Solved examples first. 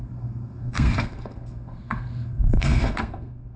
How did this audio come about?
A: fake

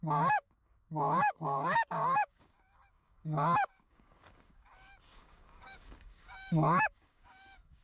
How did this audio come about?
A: fake